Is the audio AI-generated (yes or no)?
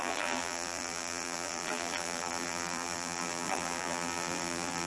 yes